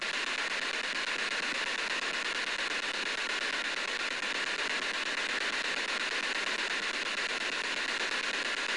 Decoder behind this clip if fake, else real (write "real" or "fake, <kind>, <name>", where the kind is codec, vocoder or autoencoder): real